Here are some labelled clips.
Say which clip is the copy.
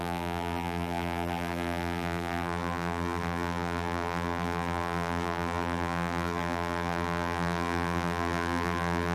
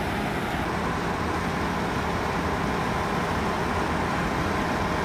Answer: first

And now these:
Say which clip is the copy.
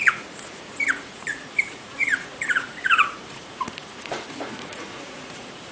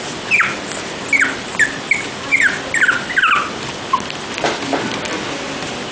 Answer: first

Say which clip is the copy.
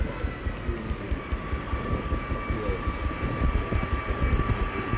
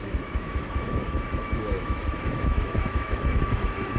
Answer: second